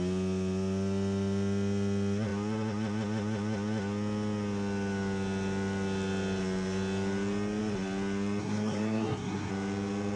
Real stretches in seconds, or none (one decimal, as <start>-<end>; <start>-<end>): 0.0-8.4; 9.5-10.2